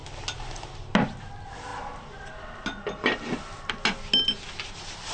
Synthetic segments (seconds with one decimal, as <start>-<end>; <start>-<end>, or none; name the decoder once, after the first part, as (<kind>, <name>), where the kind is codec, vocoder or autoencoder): none